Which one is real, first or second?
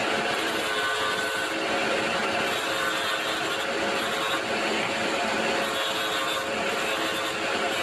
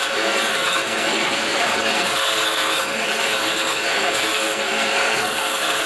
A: first